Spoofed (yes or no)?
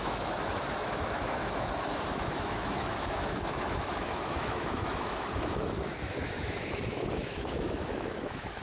yes